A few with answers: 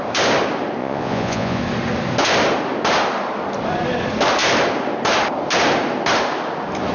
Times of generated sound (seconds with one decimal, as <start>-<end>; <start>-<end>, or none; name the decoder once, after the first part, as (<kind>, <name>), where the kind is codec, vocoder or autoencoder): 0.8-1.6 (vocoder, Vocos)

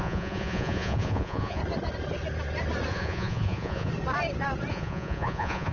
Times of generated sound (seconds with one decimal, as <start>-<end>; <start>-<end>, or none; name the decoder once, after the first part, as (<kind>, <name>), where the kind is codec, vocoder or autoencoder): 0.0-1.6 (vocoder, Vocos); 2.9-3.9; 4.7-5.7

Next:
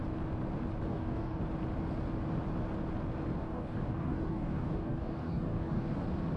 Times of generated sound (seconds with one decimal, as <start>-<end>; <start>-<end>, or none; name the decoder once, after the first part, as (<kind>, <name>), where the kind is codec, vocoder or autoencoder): 0.9-1.4 (codec, DAC); 3.4-6.0

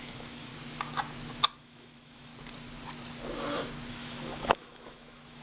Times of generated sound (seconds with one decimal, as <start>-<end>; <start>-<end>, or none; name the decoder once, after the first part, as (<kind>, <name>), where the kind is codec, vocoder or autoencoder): 0.0-0.5 (autoencoder, DAC-VAE); 1.6-2.3; 3.9-5.4

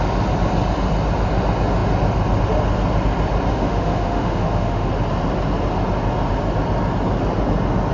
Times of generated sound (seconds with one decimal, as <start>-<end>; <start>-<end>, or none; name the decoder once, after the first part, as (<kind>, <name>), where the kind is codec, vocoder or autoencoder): 3.5-4.9 (autoencoder, DAC-VAE)

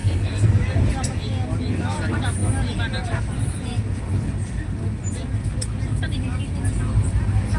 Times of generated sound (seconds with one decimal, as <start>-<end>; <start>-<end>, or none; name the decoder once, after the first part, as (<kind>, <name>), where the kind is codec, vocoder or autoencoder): 0.0-0.6 (codec, SNAC)

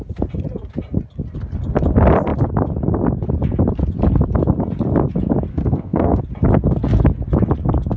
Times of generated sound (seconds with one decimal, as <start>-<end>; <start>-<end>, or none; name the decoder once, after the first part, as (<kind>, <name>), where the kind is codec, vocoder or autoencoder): 5.5-6.2 (codec, SNAC)